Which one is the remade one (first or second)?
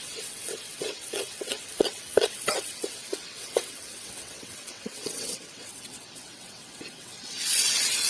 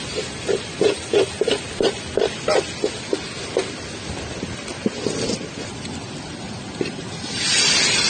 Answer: first